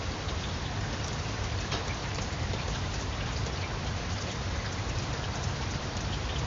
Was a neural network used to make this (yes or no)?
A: yes